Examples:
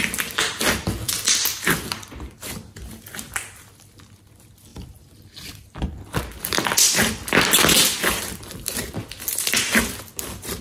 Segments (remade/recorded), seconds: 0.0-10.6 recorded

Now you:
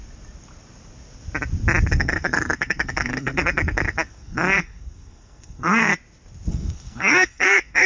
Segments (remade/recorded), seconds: 0.0-1.9 recorded; 1.9-5.9 remade; 5.9-6.5 recorded; 6.5-7.9 remade

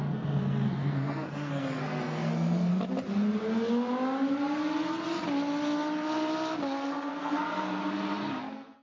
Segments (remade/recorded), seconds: 0.0-2.7 remade; 2.7-6.6 recorded; 6.6-7.8 remade; 7.8-8.4 recorded; 8.4-8.8 remade

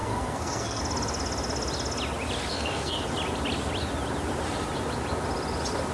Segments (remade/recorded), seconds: 0.0-0.8 remade; 0.8-2.5 recorded; 2.5-3.0 remade; 3.0-5.9 recorded